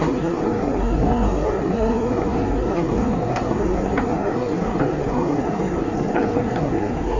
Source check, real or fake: fake